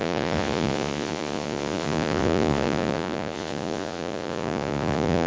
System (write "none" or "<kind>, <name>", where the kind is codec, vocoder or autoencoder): vocoder, Vocos